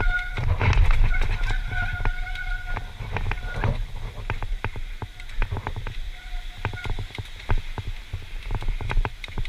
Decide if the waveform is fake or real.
real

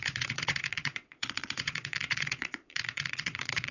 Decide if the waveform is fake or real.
fake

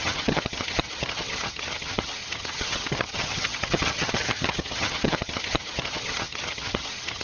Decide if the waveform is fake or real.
fake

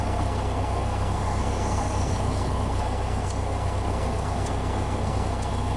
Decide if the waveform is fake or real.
fake